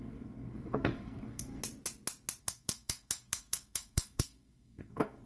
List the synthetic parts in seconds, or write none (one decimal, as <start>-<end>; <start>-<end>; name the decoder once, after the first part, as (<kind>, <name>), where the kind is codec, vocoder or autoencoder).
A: 0.0-1.6 (codec, SNAC); 2.4-5.3